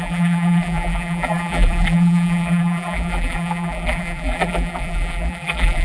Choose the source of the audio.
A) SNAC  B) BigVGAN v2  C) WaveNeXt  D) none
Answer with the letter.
B